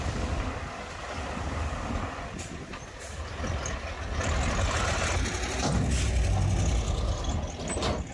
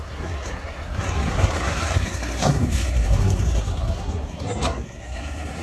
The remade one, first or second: second